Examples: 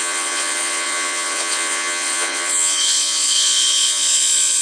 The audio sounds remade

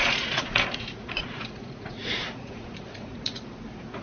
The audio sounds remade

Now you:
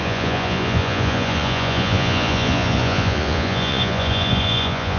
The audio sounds remade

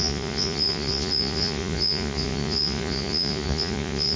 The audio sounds remade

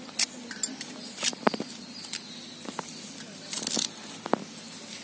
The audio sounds recorded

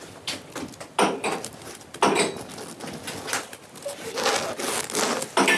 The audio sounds recorded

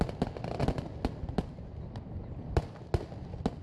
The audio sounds recorded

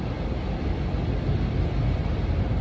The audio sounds recorded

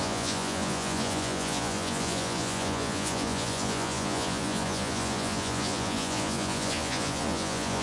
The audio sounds remade